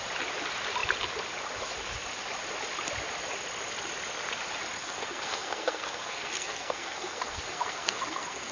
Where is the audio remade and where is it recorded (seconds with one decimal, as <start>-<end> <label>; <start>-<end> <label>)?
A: 0.0-4.8 recorded; 4.8-8.5 remade